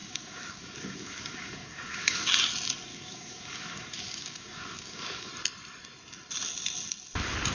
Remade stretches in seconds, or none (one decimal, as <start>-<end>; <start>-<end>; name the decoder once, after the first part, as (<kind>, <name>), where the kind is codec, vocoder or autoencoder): 0.0-2.3 (codec, DAC); 2.9-5.3